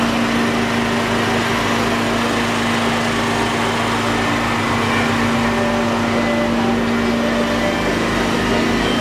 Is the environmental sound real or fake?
real